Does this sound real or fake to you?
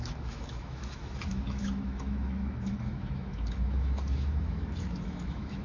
fake